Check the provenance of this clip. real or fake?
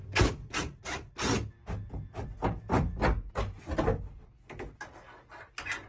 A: real